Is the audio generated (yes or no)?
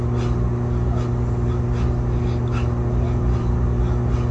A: no